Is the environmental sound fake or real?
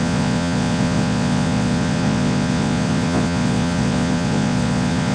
fake